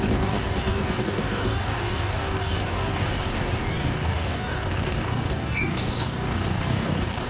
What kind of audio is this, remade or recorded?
remade